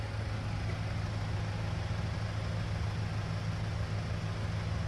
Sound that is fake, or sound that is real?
real